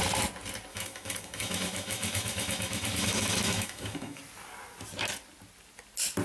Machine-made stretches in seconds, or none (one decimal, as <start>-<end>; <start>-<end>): 0.7-4.2